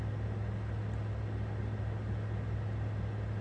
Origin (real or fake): real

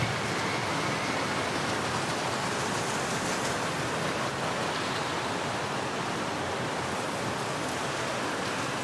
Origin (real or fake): real